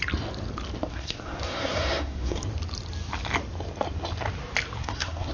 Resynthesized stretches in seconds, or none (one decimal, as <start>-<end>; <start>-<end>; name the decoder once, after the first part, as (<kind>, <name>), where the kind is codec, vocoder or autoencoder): 0.9-2.4 (codec, SNAC); 4.8-5.3